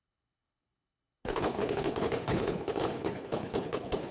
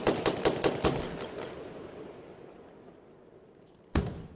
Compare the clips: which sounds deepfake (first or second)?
first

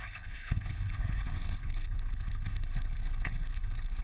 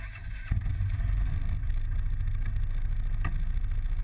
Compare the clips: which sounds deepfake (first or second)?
first